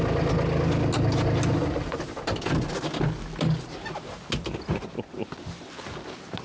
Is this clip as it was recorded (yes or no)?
yes